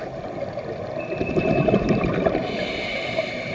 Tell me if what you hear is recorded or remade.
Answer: recorded